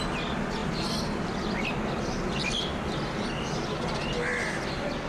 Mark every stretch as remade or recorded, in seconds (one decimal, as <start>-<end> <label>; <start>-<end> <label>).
0.0-5.1 recorded